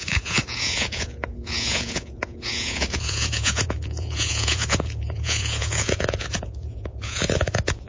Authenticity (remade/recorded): remade